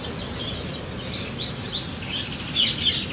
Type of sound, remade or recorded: recorded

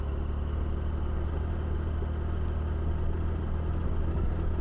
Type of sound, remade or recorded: recorded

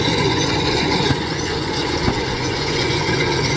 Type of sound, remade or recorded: remade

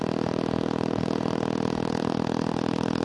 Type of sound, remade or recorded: remade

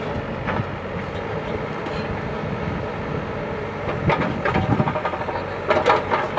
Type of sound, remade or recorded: recorded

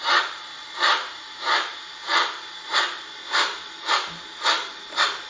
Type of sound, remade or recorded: recorded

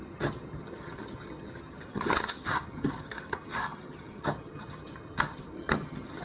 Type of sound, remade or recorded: remade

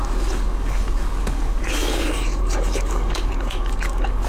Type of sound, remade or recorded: remade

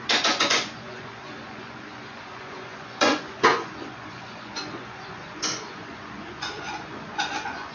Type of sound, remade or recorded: remade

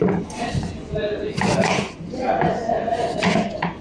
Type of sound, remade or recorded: remade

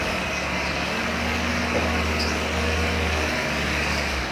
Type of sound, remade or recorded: remade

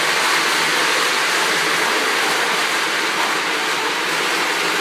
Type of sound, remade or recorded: recorded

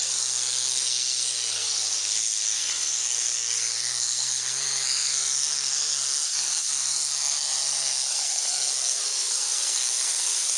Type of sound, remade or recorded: remade